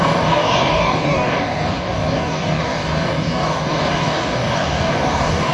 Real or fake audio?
fake